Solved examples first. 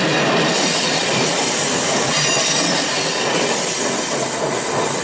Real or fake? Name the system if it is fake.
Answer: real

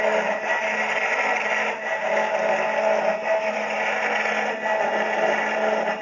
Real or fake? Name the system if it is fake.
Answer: real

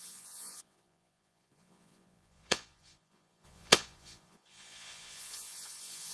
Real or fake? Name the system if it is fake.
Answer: fake, vocoder, Vocos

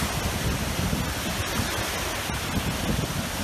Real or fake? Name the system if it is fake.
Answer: real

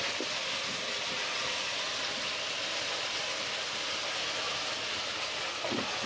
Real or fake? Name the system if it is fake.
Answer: fake, vocoder, BigVGAN v2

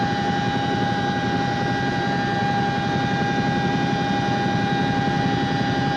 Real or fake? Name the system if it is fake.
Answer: real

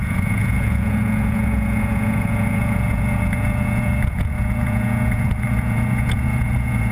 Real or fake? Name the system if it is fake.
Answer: fake, vocoder, Vocos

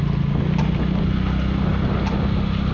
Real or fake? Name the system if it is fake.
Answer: real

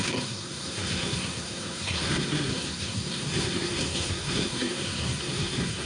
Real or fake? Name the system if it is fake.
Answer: fake, codec, SNAC